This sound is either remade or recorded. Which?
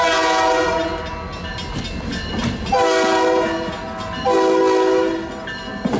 recorded